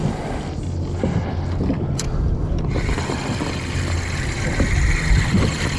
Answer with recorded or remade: recorded